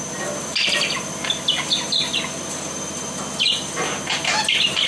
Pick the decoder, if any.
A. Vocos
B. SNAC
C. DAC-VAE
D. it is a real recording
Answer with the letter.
D